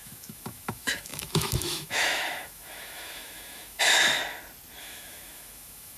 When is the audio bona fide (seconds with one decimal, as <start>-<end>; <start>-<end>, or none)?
4.2-4.8